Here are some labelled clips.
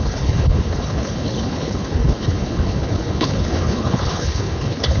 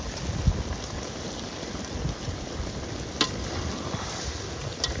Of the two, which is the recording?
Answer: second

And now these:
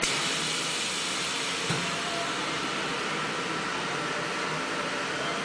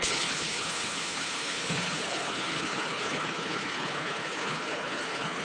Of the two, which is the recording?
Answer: first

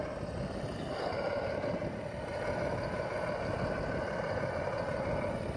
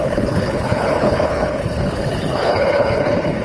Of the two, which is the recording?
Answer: first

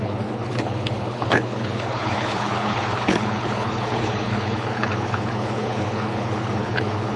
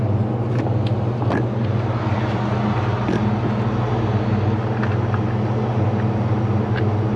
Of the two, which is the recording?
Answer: second